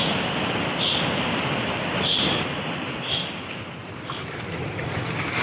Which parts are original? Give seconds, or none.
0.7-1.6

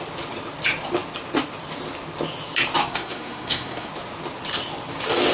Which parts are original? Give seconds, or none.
0.0-2.8; 3.9-5.3

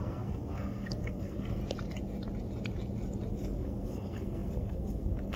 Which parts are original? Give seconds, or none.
1.6-3.3

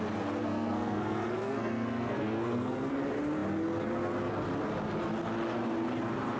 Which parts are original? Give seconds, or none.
0.0-0.4; 2.9-6.4

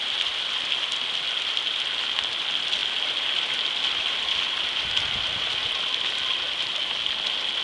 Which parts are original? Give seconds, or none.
0.0-7.6

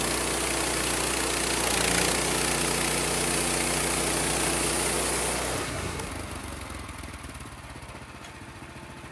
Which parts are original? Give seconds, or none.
0.0-5.6; 6.1-9.1

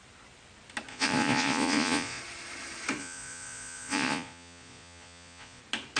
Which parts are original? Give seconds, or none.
0.0-0.9; 2.2-3.0; 5.6-6.0

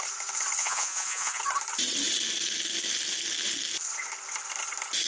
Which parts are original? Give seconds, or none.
0.0-0.6; 1.4-5.1